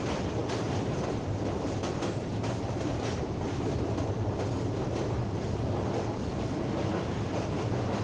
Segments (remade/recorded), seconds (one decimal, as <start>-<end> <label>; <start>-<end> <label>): 0.0-8.0 recorded